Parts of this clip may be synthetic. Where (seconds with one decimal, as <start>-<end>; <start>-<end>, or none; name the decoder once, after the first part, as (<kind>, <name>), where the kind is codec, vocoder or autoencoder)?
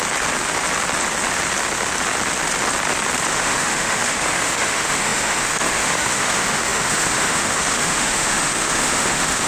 3.3-9.5 (autoencoder, DAC-VAE)